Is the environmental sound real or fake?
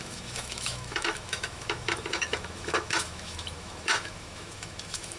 fake